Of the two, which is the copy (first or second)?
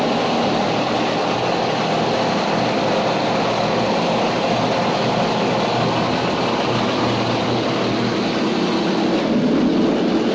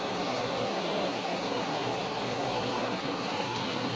second